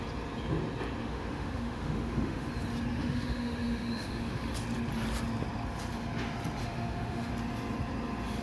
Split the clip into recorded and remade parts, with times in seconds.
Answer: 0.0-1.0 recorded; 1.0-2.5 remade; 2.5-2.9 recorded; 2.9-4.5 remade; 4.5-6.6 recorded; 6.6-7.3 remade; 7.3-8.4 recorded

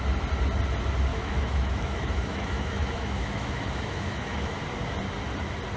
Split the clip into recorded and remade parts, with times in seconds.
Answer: 0.0-1.1 recorded; 1.1-4.6 remade; 4.6-5.8 recorded

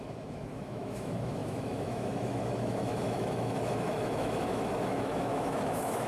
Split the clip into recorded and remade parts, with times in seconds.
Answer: 0.0-6.1 remade